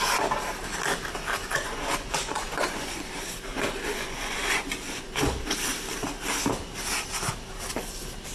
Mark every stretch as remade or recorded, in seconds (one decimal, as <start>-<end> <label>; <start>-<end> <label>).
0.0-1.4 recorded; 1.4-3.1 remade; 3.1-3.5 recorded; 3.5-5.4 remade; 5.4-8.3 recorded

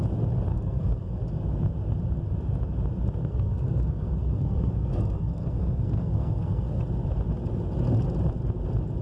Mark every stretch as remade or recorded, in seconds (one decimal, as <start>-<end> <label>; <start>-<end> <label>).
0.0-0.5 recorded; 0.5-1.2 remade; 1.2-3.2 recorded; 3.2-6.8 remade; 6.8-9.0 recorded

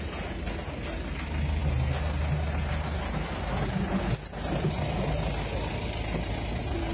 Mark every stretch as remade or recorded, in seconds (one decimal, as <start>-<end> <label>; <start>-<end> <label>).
0.0-6.9 recorded